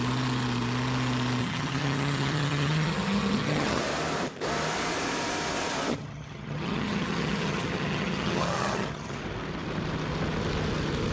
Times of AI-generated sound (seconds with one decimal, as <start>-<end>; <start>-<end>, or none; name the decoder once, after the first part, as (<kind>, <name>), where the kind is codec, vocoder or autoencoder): 1.4-3.8 (vocoder, HiFi-GAN); 5.9-9.2